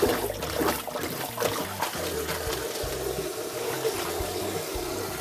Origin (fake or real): real